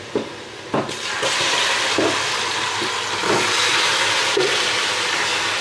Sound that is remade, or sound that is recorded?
recorded